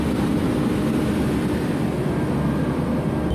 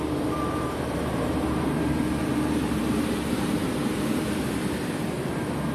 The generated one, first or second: second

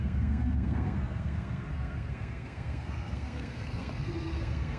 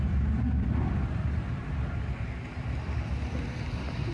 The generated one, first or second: first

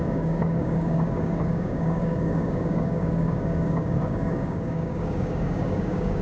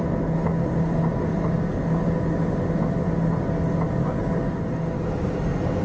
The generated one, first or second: first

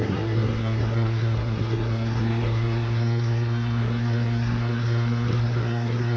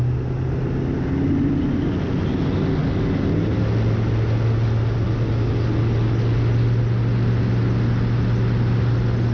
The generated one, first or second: first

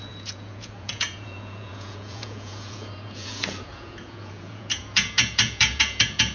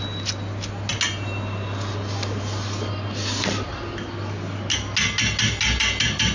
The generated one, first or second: first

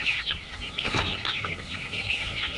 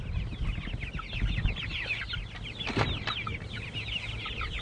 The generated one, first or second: first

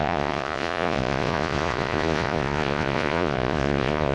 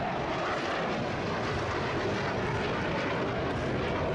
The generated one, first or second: first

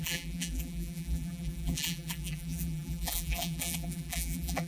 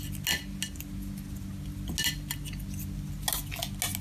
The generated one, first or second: first